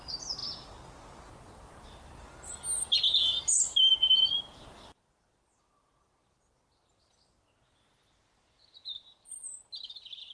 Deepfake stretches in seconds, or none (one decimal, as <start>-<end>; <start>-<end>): none